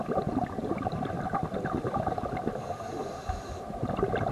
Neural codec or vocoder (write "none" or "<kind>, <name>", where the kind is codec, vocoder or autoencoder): vocoder, BigVGAN v2